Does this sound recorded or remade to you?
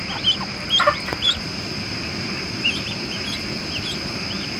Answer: remade